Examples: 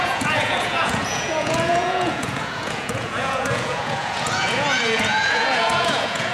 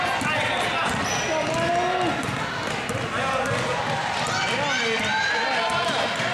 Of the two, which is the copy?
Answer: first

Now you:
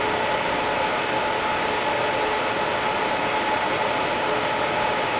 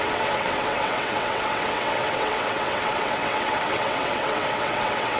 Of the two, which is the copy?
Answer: second